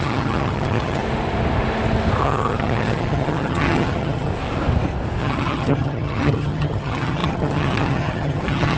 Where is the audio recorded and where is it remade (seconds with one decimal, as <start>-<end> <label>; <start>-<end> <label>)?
0.0-1.0 remade; 1.0-2.2 recorded; 2.2-4.3 remade; 4.3-5.2 recorded; 5.2-8.8 remade

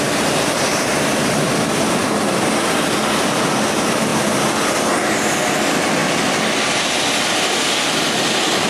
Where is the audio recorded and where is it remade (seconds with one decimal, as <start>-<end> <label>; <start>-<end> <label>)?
0.0-8.7 recorded

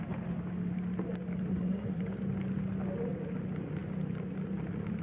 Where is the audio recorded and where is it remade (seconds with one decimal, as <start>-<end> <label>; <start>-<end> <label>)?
0.0-1.5 recorded; 1.5-2.0 remade; 2.0-5.0 recorded

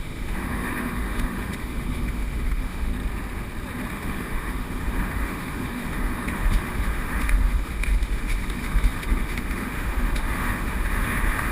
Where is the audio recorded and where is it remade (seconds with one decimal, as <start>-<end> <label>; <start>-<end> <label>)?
0.0-2.9 remade; 2.9-3.9 recorded; 3.9-11.5 remade

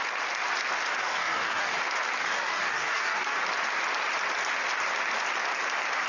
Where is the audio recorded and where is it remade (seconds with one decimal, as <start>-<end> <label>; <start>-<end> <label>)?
0.0-1.0 recorded; 1.0-1.8 remade; 1.8-2.2 recorded; 2.2-3.4 remade; 3.4-6.1 recorded